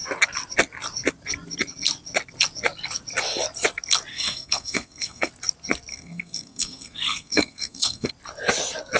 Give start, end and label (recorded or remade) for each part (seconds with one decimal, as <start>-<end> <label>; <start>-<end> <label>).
0.0-4.1 recorded; 4.1-5.3 remade; 5.3-5.9 recorded; 5.9-8.1 remade; 8.1-9.0 recorded